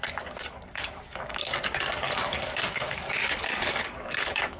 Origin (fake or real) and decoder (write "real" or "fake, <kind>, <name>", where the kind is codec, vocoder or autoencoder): fake, codec, DAC